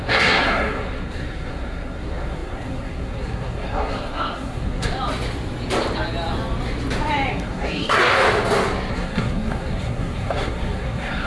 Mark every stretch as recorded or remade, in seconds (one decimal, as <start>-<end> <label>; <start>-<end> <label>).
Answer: 0.0-4.9 remade; 4.9-7.3 recorded; 7.3-8.1 remade; 8.1-8.9 recorded; 8.9-11.3 remade